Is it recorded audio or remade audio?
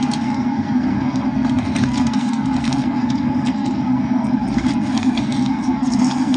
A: remade